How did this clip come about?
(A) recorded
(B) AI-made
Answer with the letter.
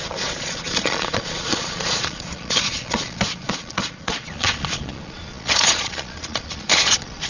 B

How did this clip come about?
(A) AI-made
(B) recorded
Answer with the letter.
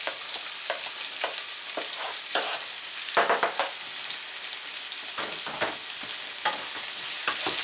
B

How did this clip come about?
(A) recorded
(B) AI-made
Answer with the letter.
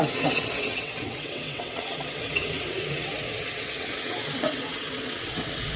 B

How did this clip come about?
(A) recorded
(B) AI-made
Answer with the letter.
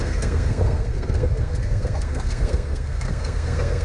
B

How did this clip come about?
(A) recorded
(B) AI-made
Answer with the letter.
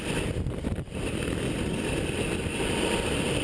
B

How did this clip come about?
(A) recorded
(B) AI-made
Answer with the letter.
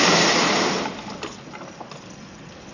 A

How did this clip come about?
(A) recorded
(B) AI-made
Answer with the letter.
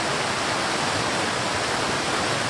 A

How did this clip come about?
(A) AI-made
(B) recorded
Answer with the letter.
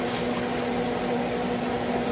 B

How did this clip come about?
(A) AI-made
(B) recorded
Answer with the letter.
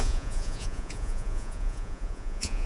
A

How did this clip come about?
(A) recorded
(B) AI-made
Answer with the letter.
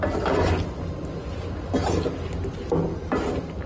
A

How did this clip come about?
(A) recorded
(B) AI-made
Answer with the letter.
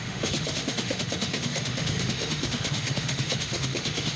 B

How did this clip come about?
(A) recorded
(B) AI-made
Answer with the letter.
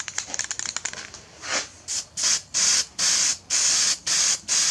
A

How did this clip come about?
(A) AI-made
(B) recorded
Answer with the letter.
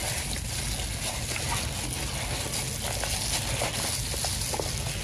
B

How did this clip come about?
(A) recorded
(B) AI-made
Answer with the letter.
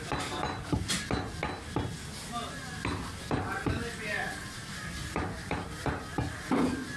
A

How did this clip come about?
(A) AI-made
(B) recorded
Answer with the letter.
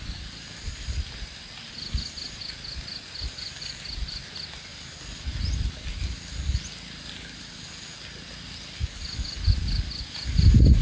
B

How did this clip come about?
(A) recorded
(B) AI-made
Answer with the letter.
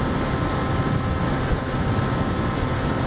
A